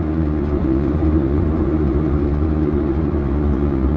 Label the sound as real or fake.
fake